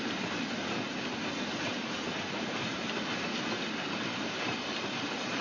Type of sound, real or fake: fake